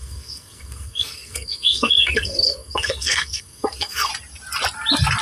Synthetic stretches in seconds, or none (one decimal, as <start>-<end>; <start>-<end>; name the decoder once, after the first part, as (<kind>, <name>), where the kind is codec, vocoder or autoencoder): 0.0-4.1 (codec, SNAC)